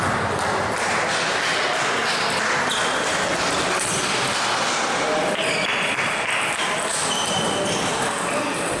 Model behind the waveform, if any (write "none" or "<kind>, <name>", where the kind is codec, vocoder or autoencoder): none